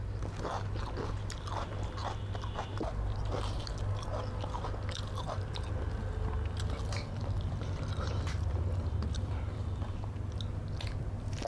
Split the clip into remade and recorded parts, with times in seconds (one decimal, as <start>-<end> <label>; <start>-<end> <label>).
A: 0.0-11.5 recorded